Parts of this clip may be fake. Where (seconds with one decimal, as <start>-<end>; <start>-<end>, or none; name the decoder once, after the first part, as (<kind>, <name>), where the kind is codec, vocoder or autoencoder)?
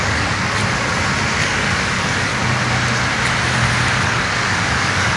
0.0-0.6 (codec, DAC); 1.4-2.3; 4.0-5.2